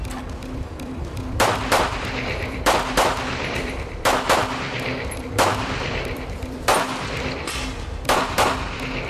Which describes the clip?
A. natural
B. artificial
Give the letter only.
B